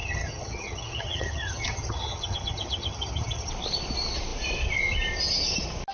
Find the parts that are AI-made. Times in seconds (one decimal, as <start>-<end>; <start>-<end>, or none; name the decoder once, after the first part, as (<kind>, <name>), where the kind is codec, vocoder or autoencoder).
0.0-3.5 (vocoder, HiFi-GAN)